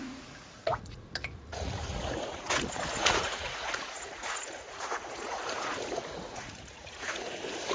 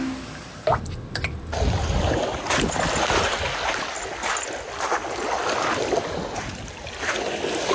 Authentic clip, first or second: second